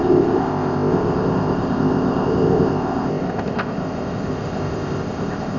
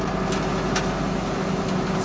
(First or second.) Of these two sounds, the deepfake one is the first